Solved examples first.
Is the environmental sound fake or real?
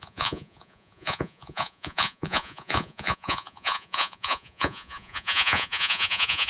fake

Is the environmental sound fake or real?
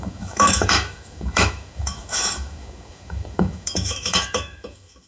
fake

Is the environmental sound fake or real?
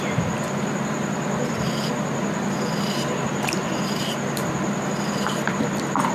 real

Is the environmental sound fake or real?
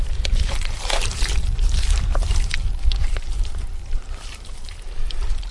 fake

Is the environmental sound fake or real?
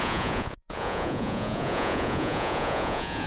fake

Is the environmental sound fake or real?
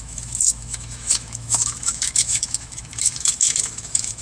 fake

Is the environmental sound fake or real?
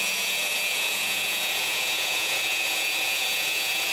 fake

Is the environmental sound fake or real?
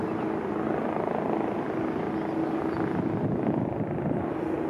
real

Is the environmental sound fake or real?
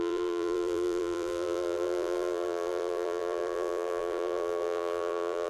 fake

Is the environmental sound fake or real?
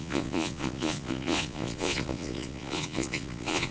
fake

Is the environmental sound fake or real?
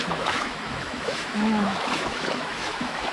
fake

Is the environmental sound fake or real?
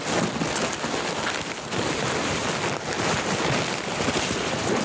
real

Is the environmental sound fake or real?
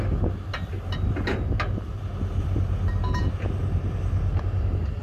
real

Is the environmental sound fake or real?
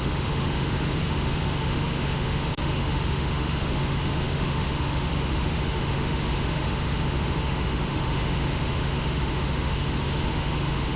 fake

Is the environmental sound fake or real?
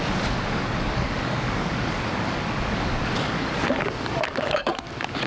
fake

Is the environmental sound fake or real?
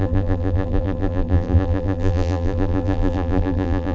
fake